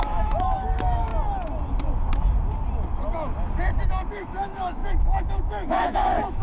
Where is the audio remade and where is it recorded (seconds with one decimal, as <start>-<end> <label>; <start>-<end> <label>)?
0.0-1.1 remade; 1.1-4.1 recorded; 4.1-6.4 remade